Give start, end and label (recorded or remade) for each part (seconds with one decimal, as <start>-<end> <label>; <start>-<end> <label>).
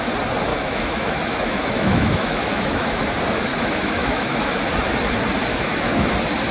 0.0-0.5 recorded; 0.5-3.0 remade; 3.0-3.5 recorded; 3.5-4.6 remade; 4.6-5.5 recorded; 5.5-6.1 remade; 6.1-6.5 recorded